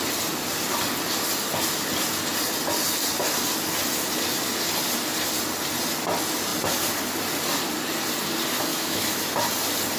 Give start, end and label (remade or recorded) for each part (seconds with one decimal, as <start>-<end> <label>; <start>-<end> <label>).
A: 0.0-8.7 recorded; 8.7-9.3 remade; 9.3-10.0 recorded